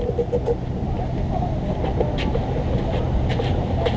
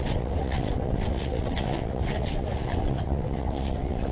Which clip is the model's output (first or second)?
second